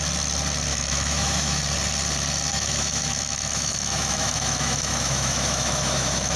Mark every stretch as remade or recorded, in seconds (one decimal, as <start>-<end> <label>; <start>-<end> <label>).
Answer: 0.0-0.7 recorded; 0.7-1.6 remade; 1.6-2.5 recorded; 2.5-6.4 remade